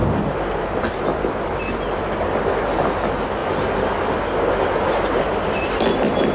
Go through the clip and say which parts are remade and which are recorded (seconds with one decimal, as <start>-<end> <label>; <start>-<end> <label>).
0.0-6.3 recorded